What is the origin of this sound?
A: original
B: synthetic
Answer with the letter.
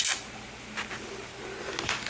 A